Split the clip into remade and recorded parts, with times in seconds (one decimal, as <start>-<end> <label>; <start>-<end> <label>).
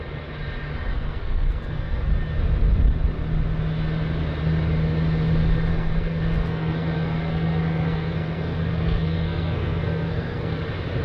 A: 0.0-0.9 recorded; 0.9-2.1 remade; 2.1-5.7 recorded; 5.7-10.6 remade; 10.6-11.0 recorded